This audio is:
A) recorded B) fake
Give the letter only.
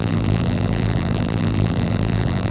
B